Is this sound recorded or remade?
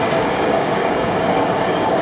remade